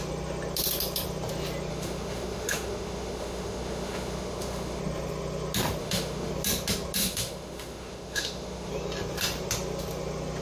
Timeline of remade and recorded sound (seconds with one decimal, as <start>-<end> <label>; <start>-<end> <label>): 0.0-1.7 recorded; 1.7-4.8 remade; 4.8-5.8 recorded; 5.8-6.3 remade; 6.3-7.0 recorded; 7.0-8.7 remade; 8.7-10.4 recorded